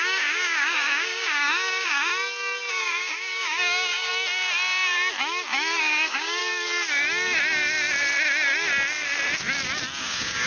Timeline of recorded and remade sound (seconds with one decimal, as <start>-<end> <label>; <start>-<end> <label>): 0.0-2.1 remade; 2.1-2.7 recorded; 2.7-4.1 remade; 4.1-5.8 recorded; 5.8-6.4 remade; 6.4-10.0 recorded; 10.0-10.5 remade